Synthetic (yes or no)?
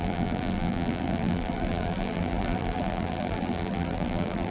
yes